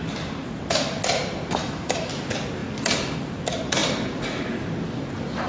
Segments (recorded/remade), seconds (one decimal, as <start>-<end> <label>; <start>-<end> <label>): 0.0-1.6 recorded; 1.6-2.1 remade; 2.1-5.5 recorded